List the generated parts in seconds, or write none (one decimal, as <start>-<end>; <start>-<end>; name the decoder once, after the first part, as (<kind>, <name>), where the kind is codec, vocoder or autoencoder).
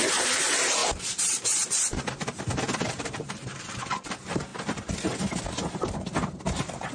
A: 0.0-4.5 (vocoder, BigVGAN v2); 5.4-6.9